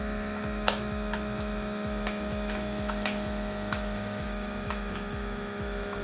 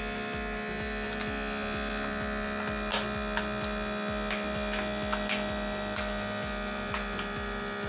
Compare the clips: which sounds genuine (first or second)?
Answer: second